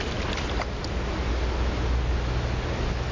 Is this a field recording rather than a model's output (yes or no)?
yes